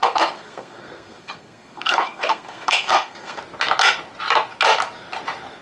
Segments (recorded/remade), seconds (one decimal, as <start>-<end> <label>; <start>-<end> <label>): 0.0-3.4 remade; 3.4-5.6 recorded